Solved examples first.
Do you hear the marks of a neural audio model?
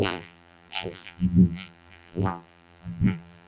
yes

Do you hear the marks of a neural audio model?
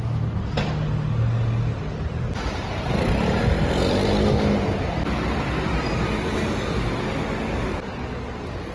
no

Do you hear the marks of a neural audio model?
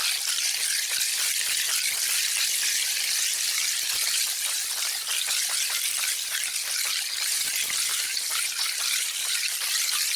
no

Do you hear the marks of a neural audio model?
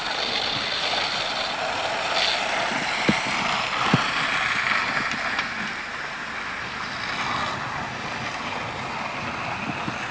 no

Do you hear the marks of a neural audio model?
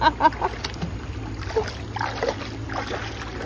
no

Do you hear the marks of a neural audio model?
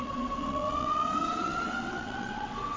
yes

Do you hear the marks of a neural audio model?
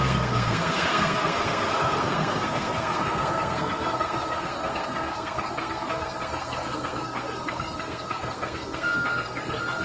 yes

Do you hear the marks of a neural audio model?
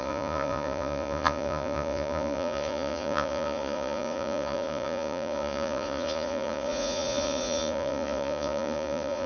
yes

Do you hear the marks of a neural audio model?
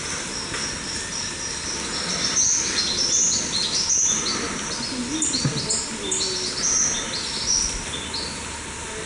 no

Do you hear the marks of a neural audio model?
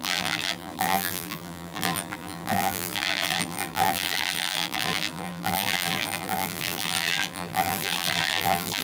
yes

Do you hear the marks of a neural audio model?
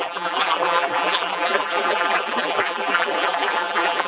yes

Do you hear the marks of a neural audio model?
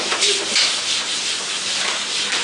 yes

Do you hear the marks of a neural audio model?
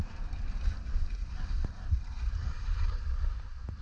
no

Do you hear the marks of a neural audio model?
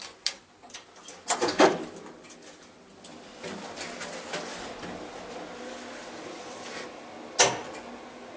no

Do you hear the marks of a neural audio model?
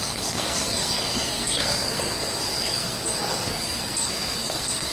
yes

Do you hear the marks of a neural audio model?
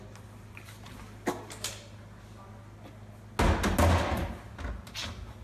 no